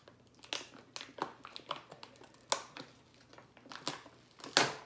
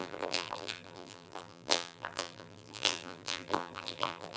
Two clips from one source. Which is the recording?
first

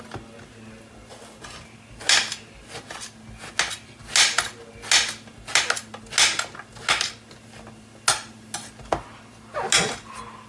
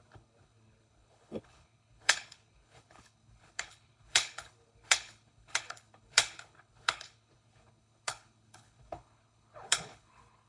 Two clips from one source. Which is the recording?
first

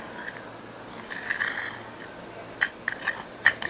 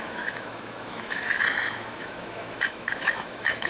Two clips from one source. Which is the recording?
first